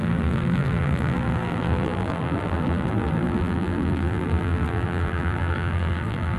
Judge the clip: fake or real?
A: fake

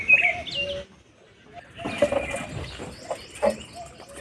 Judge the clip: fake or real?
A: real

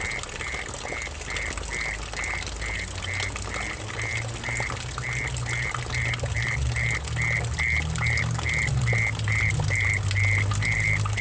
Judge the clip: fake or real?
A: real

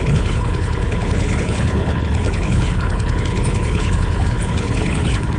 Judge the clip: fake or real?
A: fake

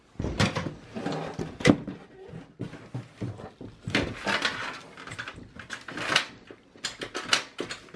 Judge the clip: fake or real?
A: real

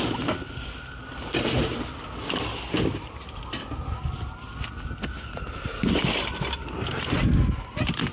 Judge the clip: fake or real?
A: real